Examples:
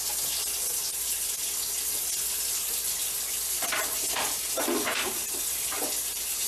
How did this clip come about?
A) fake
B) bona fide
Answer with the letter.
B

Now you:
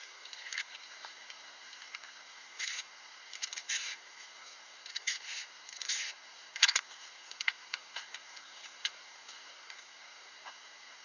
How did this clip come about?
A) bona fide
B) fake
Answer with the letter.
B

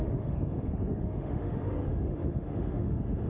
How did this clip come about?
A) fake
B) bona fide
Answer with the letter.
A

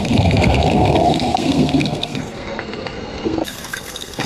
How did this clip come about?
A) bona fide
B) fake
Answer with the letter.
B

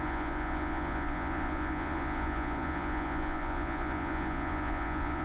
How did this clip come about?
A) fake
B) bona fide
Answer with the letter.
A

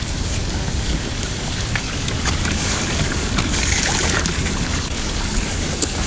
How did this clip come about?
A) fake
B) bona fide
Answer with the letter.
A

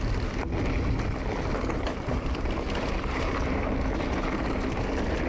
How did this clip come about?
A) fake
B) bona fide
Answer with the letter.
B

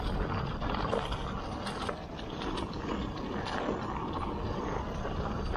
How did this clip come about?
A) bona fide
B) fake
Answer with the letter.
A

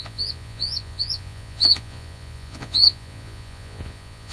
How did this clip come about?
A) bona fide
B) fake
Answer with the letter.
B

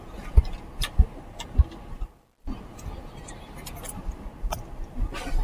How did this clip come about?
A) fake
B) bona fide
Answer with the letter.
B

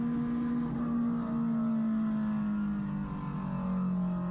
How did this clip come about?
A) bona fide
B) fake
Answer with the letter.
A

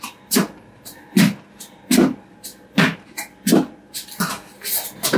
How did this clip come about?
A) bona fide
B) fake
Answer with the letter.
A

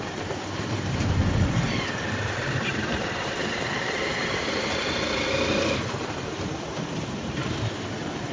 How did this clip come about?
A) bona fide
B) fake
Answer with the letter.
B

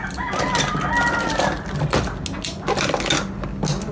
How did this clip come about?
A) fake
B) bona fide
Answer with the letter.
B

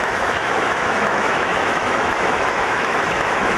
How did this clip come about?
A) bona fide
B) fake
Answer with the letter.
B